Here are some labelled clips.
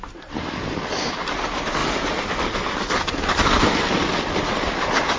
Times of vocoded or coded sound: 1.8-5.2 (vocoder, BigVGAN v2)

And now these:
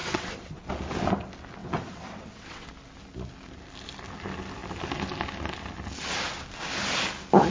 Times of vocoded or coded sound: 0.0-0.6 (vocoder, WaveNeXt); 1.6-2.7